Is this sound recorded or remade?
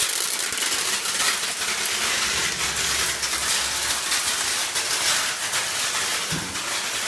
recorded